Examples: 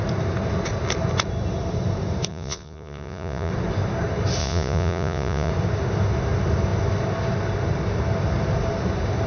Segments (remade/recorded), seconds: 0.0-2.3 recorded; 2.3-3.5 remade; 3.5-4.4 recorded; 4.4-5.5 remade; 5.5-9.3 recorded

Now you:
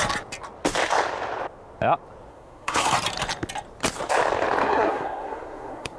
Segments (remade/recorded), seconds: 0.0-2.3 recorded; 2.3-2.9 remade; 2.9-4.6 recorded; 4.6-6.0 remade

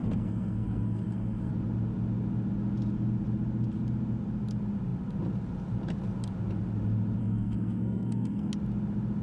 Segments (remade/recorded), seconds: 0.0-1.5 remade; 1.5-7.2 recorded; 7.2-8.5 remade; 8.5-9.2 recorded

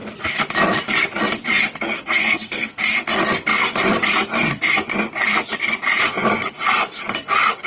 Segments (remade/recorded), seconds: 0.0-2.2 recorded; 2.2-2.8 remade; 2.8-7.7 recorded